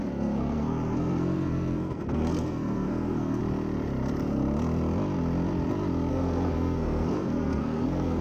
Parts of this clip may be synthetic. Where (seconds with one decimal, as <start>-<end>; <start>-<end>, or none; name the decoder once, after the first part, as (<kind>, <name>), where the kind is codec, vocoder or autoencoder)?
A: 0.0-3.4 (codec, SNAC); 6.1-8.2